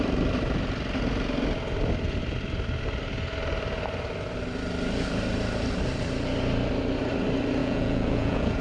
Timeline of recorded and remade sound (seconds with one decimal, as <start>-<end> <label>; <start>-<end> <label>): 0.0-7.6 recorded; 7.6-8.6 remade